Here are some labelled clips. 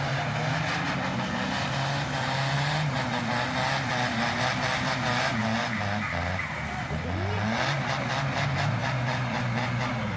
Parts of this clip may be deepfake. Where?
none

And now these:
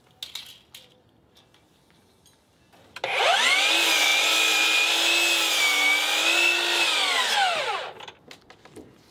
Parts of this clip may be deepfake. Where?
none

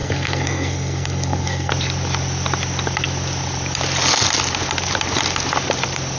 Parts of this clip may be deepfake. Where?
0.0-1.7

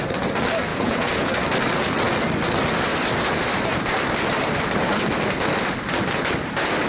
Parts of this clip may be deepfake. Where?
0.7-1.3